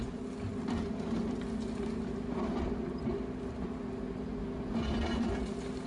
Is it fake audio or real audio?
real